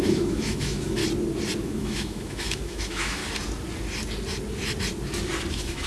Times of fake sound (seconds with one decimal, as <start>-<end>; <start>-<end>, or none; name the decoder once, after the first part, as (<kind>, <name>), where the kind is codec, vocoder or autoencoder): 0.0-1.0 (autoencoder, DAC-VAE); 1.6-3.2; 5.5-5.9